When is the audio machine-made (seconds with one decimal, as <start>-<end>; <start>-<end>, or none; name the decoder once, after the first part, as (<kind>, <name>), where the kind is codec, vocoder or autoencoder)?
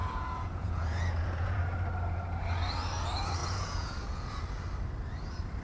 0.0-1.6 (vocoder, Vocos); 3.4-4.4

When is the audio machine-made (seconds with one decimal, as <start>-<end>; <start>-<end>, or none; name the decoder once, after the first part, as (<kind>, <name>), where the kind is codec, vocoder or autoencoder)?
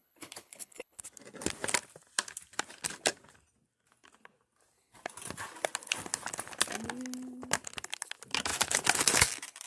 0.0-1.0 (codec, HILCodec)